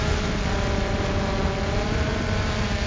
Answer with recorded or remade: recorded